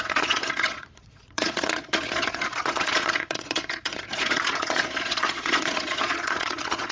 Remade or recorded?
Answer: remade